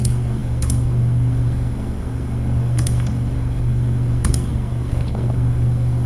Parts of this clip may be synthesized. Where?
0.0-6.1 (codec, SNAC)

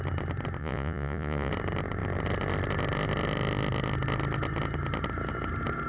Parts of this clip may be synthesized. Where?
0.6-1.5 (vocoder, Vocos)

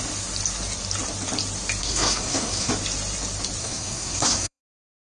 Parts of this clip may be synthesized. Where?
1.8-2.7 (codec, SNAC); 3.6-4.6

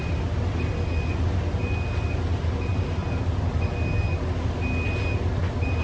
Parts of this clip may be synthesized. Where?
none

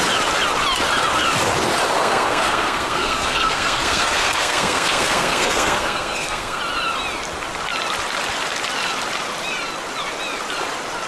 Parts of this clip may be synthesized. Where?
2.0-6.6 (codec, SNAC)

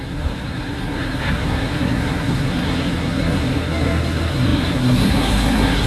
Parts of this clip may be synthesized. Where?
0.0-5.9 (codec, SNAC)